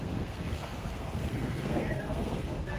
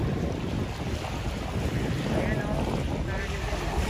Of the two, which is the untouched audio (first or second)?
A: second